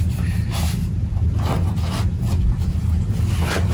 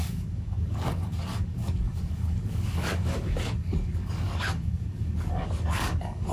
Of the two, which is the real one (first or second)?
first